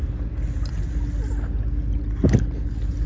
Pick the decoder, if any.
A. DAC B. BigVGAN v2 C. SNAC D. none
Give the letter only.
D